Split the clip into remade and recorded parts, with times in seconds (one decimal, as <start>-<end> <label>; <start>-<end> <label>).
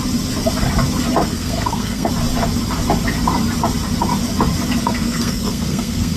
0.0-1.2 recorded; 1.2-2.1 remade; 2.1-4.8 recorded; 4.8-6.2 remade